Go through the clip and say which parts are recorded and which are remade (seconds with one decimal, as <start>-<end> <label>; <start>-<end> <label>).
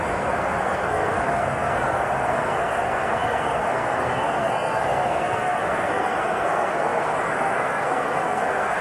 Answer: 0.0-8.8 remade